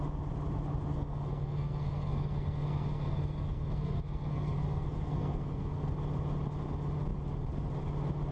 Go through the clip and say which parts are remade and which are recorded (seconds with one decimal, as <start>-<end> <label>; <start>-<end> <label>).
0.0-0.9 recorded; 0.9-5.9 remade; 5.9-8.3 recorded